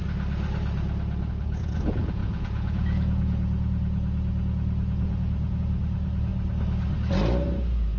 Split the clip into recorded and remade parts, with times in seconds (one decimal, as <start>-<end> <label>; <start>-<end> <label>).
0.0-1.3 recorded; 1.3-6.3 remade; 6.3-8.0 recorded